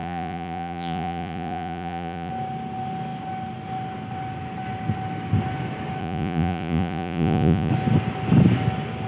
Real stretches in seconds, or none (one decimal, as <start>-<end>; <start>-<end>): 2.3-6.0; 7.7-9.1